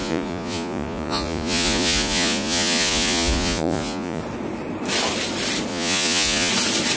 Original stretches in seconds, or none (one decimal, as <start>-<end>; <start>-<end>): 4.2-5.7; 6.5-7.0